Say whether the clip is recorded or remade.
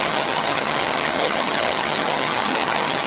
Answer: remade